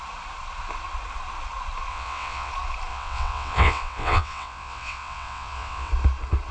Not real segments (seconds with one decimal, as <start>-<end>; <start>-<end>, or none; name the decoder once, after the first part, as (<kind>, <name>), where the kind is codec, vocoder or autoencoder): 1.9-2.5 (vocoder, WaveNeXt); 2.9-5.9